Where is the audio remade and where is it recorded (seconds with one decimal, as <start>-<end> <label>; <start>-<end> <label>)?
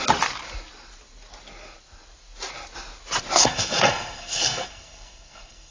0.0-3.4 recorded; 3.4-5.7 remade